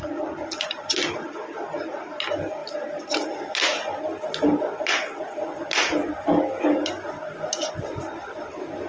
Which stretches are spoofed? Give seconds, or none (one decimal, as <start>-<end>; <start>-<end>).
none